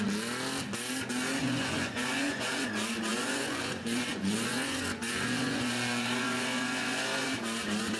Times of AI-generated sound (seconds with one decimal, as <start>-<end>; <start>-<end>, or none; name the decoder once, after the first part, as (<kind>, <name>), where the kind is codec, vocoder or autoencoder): 1.4-2.7 (vocoder, Vocos); 3.1-7.3